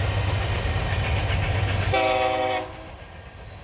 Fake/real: real